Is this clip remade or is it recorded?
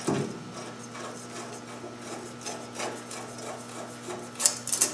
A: recorded